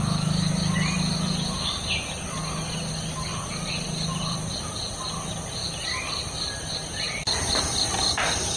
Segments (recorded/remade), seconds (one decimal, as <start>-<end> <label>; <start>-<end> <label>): 0.0-3.3 recorded; 3.3-5.1 remade; 5.1-5.6 recorded; 5.6-7.6 remade; 7.6-8.6 recorded